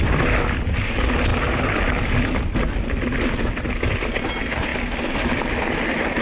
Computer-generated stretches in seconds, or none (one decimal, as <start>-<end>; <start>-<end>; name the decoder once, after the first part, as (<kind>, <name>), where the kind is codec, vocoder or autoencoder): none